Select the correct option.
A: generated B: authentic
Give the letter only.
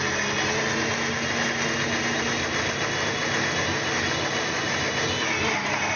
B